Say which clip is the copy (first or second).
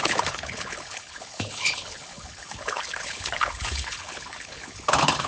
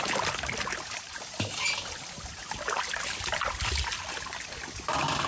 first